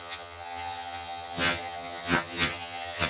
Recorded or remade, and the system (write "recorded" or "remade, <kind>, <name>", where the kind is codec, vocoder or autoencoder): remade, vocoder, HiFi-GAN